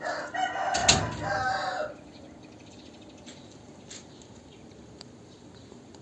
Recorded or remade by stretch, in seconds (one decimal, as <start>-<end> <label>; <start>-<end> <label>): 0.0-6.0 recorded